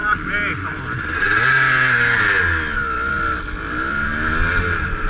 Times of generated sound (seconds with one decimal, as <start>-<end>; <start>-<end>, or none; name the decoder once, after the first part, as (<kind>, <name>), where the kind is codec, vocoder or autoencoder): none